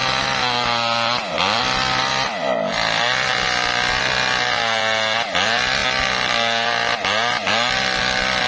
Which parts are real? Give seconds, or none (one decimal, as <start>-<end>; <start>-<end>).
0.0-8.5